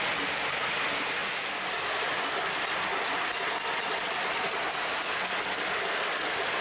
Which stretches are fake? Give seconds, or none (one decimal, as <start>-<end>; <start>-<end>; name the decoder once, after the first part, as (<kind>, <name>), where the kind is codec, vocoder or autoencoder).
none